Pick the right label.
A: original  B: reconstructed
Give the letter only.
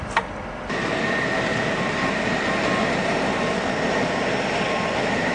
A